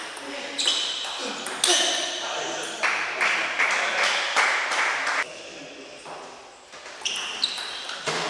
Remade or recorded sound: recorded